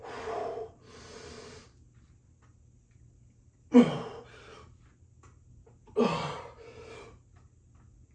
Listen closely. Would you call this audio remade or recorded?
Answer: recorded